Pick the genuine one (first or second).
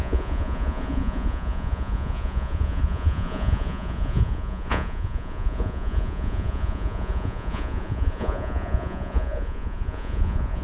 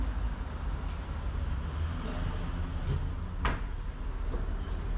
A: second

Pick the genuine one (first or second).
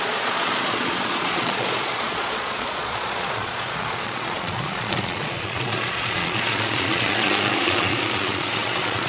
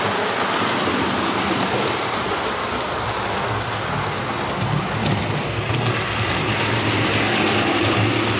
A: second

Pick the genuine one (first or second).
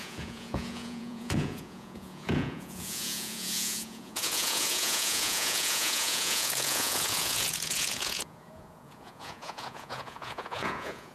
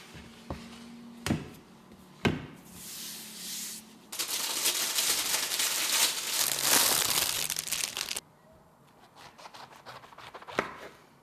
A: second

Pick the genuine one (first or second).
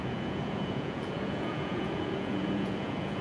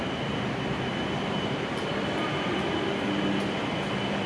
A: second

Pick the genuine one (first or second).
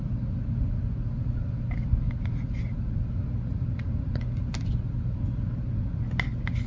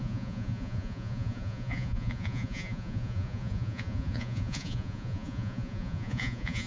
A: first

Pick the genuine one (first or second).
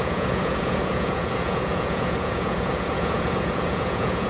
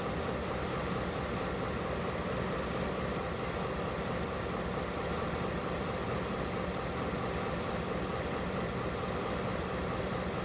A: second